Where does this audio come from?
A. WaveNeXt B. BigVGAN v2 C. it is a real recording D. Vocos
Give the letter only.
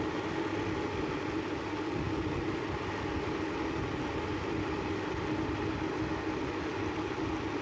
C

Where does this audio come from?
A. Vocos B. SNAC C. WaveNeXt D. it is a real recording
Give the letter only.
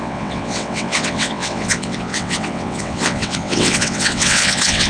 C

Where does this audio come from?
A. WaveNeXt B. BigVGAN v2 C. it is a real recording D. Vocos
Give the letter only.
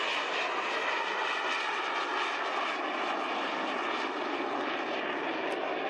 C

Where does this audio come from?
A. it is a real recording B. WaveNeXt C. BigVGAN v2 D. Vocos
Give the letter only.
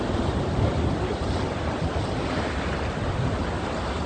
A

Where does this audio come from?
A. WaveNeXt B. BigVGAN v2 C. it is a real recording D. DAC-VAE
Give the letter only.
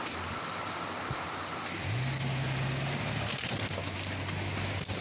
C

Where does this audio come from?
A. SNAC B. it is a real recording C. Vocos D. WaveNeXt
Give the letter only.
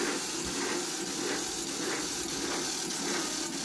B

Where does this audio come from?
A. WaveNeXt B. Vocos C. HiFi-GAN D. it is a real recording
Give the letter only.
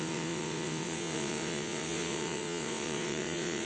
A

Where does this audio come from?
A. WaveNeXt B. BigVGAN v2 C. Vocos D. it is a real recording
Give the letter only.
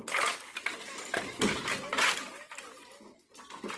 D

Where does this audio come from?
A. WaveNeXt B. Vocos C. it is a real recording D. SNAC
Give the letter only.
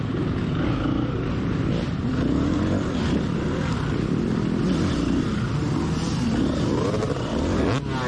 C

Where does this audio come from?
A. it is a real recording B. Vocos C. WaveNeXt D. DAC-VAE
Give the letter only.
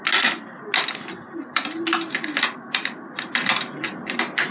A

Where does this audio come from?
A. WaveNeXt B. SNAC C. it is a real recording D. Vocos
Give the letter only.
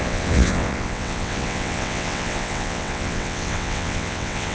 A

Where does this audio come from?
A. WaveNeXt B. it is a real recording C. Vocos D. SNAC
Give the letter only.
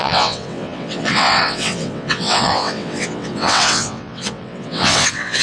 A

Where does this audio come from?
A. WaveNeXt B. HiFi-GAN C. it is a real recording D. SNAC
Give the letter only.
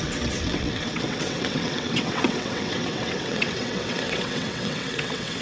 A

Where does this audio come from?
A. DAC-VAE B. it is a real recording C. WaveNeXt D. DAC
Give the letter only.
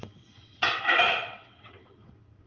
C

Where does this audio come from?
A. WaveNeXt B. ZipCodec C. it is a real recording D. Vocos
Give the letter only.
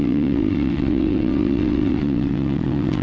A